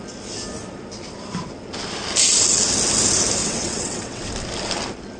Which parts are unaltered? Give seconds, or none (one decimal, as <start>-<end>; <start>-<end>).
0.0-3.4; 4.3-5.2

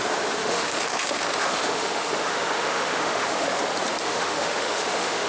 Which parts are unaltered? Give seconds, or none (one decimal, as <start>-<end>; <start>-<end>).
0.0-0.4; 3.6-4.0

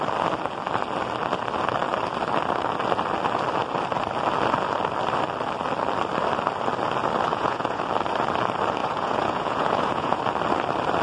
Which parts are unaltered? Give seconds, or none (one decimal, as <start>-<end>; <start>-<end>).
0.0-7.3; 7.8-8.8; 10.2-11.0

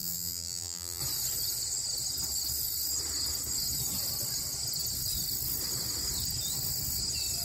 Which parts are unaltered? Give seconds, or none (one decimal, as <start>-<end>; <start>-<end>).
1.0-7.4